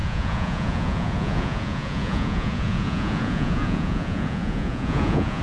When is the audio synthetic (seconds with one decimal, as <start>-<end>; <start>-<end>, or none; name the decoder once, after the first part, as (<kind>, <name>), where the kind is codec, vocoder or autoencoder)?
0.0-5.4 (vocoder, Vocos)